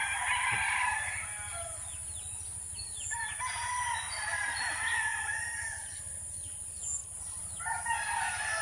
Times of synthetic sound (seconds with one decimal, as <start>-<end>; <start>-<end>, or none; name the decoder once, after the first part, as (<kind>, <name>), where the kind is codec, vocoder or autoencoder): 5.1-6.0 (vocoder, BigVGAN v2); 7.0-7.8